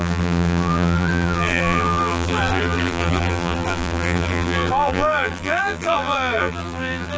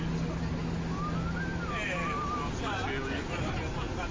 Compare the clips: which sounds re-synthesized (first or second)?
first